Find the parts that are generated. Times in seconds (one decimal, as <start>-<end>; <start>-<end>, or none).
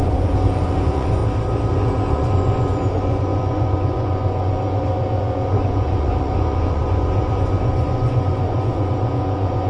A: 0.0-1.2; 1.7-9.7